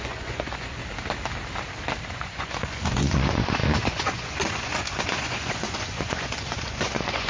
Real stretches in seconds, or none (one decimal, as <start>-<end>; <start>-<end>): 0.8-2.1